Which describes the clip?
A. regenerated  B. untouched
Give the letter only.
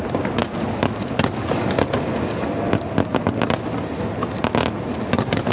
B